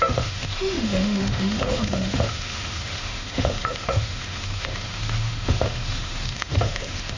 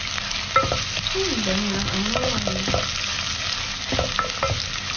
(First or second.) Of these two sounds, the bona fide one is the second